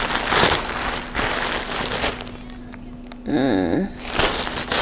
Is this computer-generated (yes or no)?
no